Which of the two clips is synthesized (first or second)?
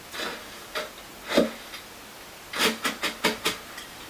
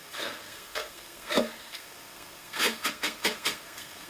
second